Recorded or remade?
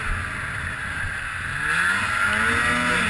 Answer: recorded